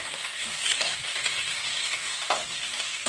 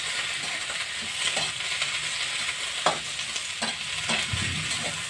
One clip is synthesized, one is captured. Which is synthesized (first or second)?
first